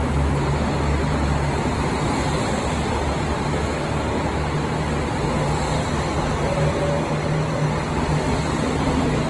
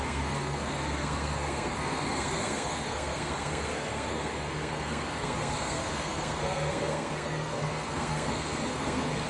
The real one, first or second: first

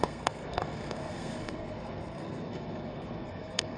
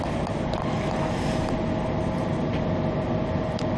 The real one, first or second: second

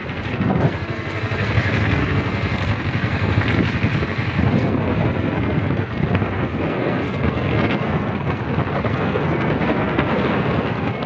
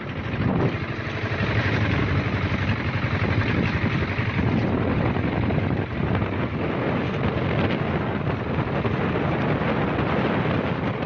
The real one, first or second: second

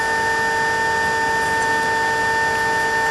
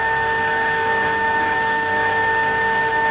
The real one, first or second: first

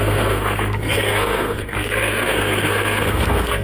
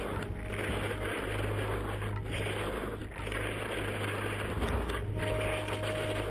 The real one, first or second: second